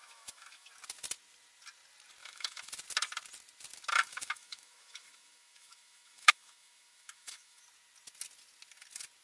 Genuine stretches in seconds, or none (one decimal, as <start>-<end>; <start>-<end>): 0.7-2.2; 2.7-3.9; 7.6-9.2